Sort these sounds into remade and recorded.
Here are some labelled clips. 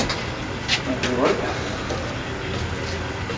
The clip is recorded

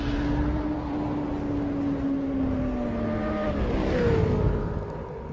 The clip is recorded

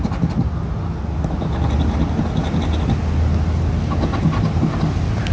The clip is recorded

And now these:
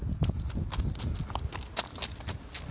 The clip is recorded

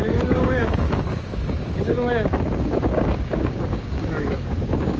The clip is remade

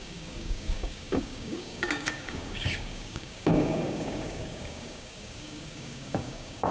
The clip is remade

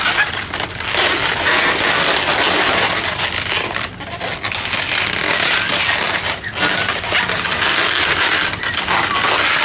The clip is recorded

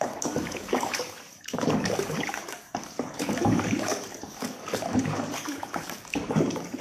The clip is remade